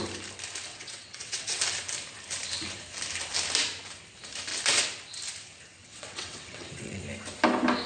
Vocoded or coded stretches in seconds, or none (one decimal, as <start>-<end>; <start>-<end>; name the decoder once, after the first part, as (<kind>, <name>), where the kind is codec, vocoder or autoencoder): 0.7-1.6 (vocoder, WaveNeXt); 5.8-7.0

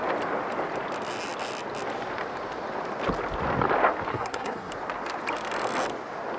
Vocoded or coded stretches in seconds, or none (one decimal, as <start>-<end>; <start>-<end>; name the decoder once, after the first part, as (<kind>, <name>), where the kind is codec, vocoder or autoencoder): 4.1-4.7 (codec, SNAC)

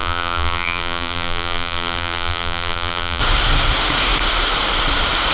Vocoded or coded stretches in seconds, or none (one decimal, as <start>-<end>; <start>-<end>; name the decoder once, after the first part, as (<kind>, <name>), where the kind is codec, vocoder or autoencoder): 0.0-3.2 (vocoder, BigVGAN v2)

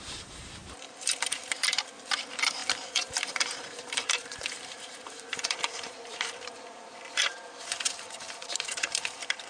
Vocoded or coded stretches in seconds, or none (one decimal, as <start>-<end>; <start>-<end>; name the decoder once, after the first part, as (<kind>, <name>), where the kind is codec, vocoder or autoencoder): 0.0-9.5 (vocoder, BigVGAN v2)

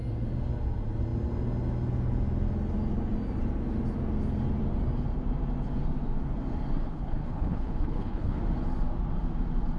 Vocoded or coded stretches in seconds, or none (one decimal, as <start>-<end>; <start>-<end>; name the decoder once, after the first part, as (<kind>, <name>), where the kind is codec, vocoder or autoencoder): 6.8-8.4 (codec, HILCodec)

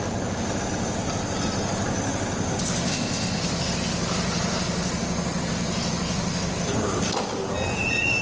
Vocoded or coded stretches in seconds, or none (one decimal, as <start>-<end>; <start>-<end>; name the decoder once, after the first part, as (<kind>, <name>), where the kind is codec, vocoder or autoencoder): 2.9-3.4 (codec, ZipCodec)

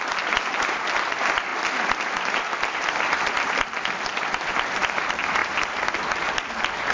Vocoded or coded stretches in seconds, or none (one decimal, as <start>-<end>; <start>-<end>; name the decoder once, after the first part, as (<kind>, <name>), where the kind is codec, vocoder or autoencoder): 4.1-4.8 (vocoder, BigVGAN v2); 5.4-6.0

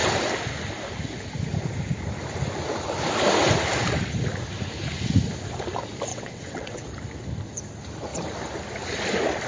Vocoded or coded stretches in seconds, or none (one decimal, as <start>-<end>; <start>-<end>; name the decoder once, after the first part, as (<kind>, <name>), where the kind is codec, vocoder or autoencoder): 6.1-6.9 (vocoder, WaveNeXt)